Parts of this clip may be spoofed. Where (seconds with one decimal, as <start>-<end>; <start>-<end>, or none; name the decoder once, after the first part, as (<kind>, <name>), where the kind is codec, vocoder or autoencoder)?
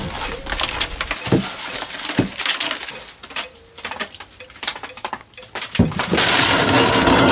none